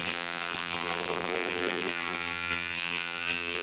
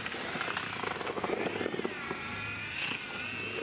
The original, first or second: second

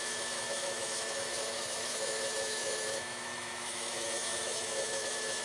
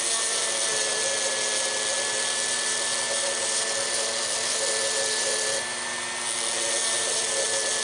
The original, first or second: second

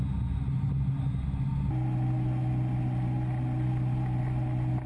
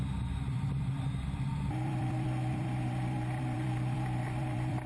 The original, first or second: first